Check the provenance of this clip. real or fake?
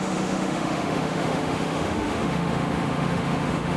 fake